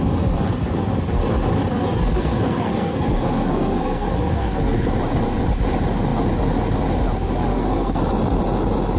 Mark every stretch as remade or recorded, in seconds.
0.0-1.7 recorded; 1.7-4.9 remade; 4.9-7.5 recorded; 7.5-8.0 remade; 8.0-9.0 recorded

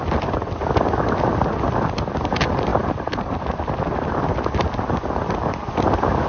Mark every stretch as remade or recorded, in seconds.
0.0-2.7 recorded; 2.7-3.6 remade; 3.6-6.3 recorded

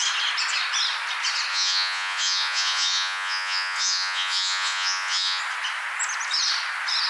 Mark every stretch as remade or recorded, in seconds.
0.0-1.5 recorded; 1.5-5.4 remade; 5.4-7.1 recorded